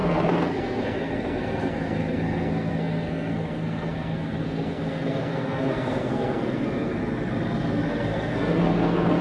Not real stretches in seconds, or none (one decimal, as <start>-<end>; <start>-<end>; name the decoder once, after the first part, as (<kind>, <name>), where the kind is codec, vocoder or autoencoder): 0.0-7.0 (codec, SNAC); 7.9-9.2